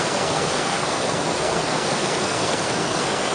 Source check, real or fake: fake